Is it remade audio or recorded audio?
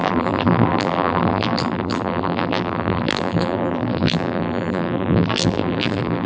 remade